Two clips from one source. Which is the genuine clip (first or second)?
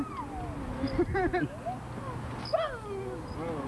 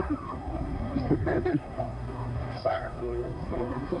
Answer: first